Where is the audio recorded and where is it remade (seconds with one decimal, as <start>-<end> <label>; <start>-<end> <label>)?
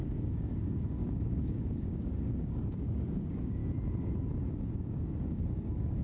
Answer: 0.0-3.6 remade; 3.6-4.5 recorded; 4.5-6.0 remade